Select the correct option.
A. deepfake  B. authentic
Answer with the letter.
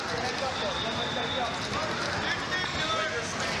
B